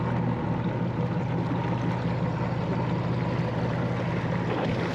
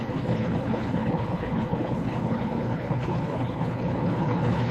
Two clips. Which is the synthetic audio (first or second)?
second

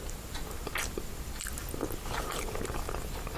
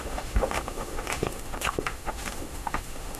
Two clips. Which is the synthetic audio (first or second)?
second